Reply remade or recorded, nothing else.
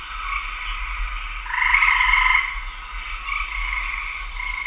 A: recorded